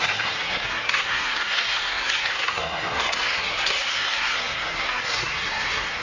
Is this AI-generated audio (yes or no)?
yes